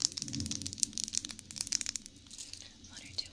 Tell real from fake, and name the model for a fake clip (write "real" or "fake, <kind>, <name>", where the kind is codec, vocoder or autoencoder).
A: real